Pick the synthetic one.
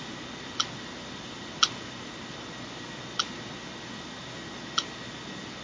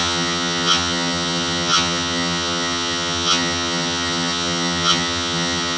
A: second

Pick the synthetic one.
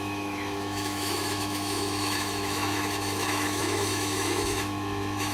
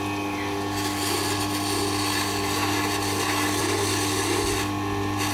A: first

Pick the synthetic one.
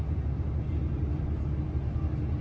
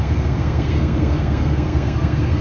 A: second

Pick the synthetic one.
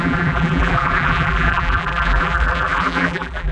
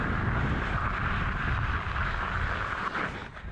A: first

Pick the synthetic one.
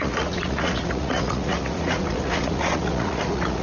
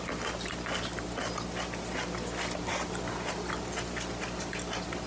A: first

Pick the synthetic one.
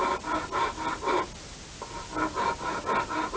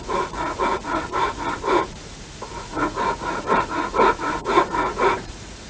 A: second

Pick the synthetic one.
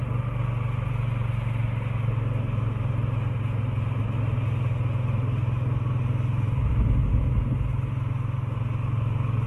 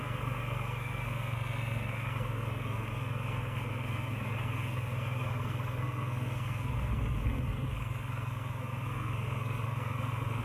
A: second